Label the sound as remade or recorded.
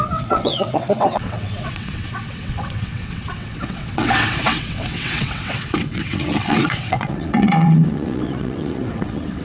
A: remade